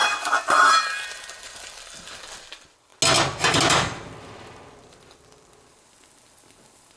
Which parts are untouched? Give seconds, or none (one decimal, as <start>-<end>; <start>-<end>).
2.9-3.7